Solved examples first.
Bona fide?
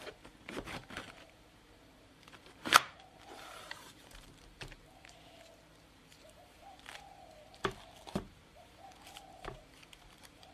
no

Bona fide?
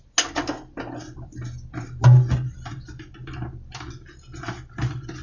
yes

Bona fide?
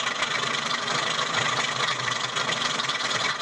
no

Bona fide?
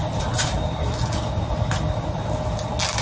yes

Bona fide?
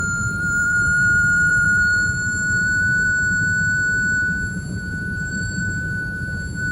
no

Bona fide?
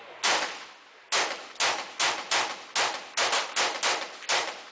yes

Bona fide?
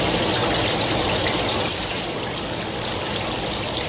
no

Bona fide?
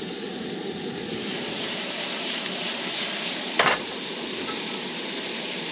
no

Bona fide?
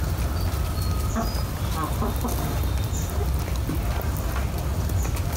yes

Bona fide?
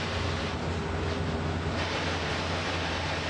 yes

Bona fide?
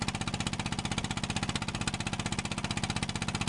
yes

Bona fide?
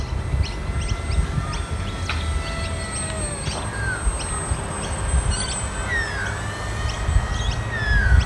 yes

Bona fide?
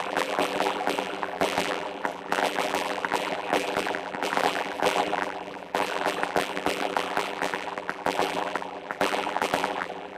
no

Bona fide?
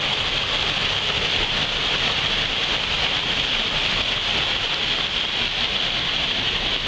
yes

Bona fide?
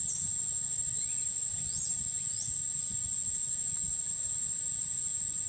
yes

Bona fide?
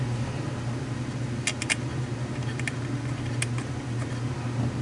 yes